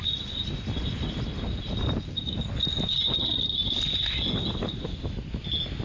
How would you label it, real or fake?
real